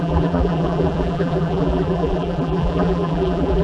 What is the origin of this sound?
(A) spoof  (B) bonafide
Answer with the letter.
A